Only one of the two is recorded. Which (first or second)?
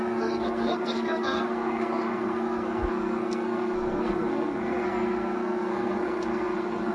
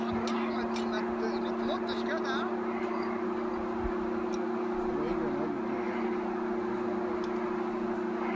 second